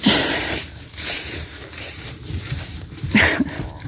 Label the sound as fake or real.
fake